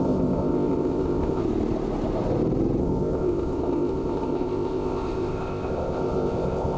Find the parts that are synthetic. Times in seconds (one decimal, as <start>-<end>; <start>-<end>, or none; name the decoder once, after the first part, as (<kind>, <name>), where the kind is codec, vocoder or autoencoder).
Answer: 0.0-1.4 (codec, ZipCodec); 2.8-6.8